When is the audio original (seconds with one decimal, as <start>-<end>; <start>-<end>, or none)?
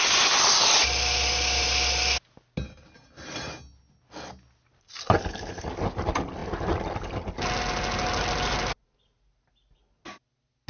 0.0-10.7